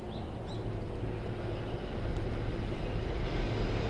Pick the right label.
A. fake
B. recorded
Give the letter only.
B